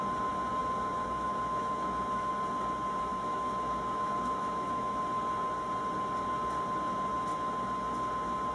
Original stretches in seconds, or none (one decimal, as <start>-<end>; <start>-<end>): 0.0-0.6; 2.3-3.1; 5.0-8.5

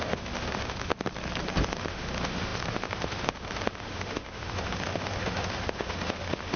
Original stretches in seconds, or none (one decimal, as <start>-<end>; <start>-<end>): 0.9-1.7

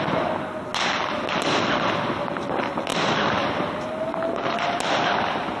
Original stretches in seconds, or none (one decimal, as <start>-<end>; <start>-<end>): 0.0-5.6